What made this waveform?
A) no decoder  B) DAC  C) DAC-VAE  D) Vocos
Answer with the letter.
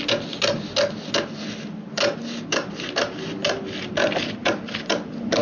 A